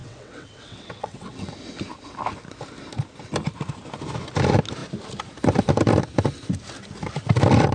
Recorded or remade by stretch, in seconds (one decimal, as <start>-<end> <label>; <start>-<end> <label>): 0.0-1.5 remade; 1.5-7.7 recorded